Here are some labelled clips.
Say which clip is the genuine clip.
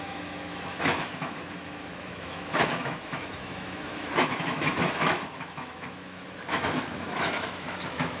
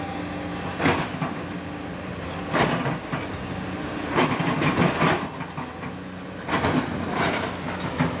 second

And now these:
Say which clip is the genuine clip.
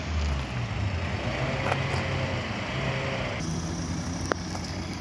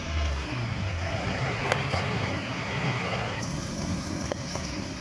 first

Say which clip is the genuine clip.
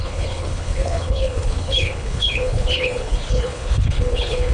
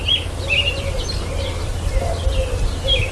second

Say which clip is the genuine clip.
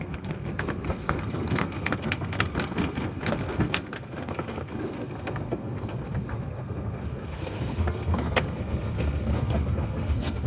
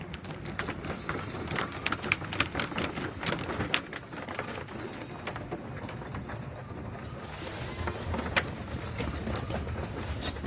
second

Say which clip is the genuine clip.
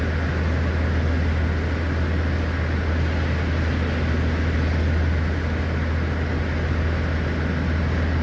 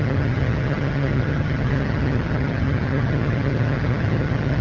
first